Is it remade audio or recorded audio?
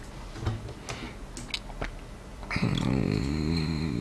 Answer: recorded